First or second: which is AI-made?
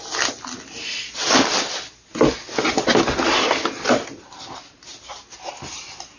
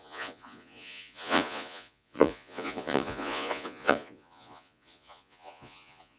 second